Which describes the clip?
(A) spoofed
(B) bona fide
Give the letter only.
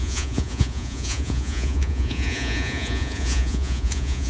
A